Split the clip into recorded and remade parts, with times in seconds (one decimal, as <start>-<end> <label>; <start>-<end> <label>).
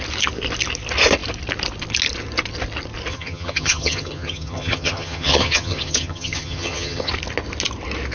0.0-3.1 recorded; 3.1-7.1 remade; 7.1-8.1 recorded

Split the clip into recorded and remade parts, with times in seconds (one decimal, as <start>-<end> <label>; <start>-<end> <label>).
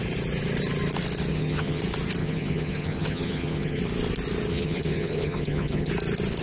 0.0-1.3 recorded; 1.3-1.8 remade; 1.8-2.2 recorded; 2.2-3.8 remade; 3.8-4.5 recorded; 4.5-5.9 remade; 5.9-6.4 recorded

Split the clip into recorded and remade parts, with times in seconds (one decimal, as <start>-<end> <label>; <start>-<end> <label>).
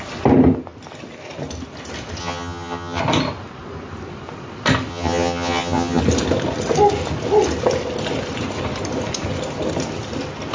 0.0-2.2 recorded; 2.2-3.0 remade; 3.0-4.9 recorded; 4.9-6.0 remade; 6.0-10.5 recorded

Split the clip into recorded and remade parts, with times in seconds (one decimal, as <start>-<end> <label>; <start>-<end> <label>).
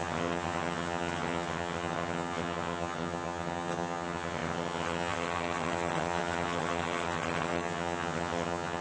0.0-8.8 remade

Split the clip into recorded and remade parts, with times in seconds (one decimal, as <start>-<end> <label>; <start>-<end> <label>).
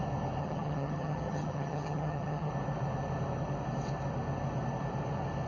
0.0-0.4 recorded; 0.4-2.5 remade; 2.5-5.5 recorded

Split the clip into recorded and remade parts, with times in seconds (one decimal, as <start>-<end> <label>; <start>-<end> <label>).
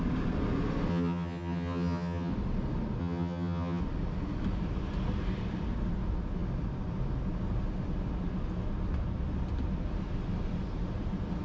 0.0-0.9 recorded; 0.9-2.3 remade; 2.3-3.0 recorded; 3.0-3.8 remade; 3.8-11.4 recorded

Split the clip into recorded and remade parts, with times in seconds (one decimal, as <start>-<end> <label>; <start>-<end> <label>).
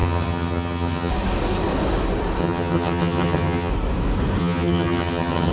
0.0-1.1 remade; 1.1-2.4 recorded; 2.4-3.7 remade; 3.7-4.4 recorded; 4.4-5.5 remade